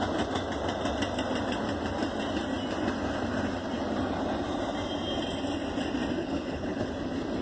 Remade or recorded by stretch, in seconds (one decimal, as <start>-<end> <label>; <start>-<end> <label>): 0.0-6.2 recorded; 6.2-6.9 remade; 6.9-7.4 recorded

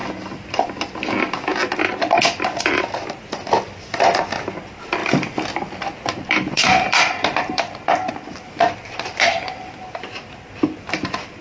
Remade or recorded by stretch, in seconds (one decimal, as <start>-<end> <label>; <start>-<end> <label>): 0.0-5.0 recorded; 5.0-8.1 remade; 8.1-8.8 recorded; 8.8-9.7 remade; 9.7-11.4 recorded

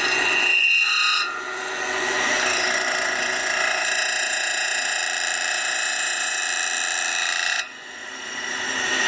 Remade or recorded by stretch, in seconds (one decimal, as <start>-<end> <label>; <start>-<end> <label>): 0.0-5.0 remade; 5.0-5.5 recorded; 5.5-6.4 remade; 6.4-7.5 recorded; 7.5-8.0 remade; 8.0-9.1 recorded

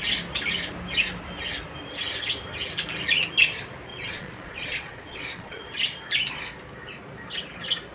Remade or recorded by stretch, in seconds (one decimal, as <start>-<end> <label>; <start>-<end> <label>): 0.0-3.9 recorded; 3.9-5.6 remade; 5.6-7.9 recorded

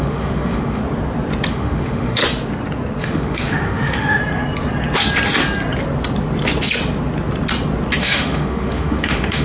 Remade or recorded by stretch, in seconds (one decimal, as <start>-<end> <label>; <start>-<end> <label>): 0.0-0.8 remade; 0.8-1.5 recorded; 1.5-2.2 remade; 2.2-3.0 recorded; 3.0-4.2 remade; 4.2-8.0 recorded; 8.0-9.4 remade